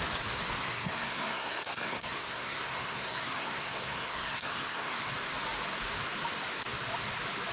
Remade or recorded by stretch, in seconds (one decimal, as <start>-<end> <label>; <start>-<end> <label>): 0.0-0.6 recorded; 0.6-5.1 remade; 5.1-7.5 recorded